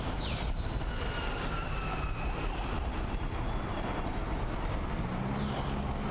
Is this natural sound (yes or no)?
yes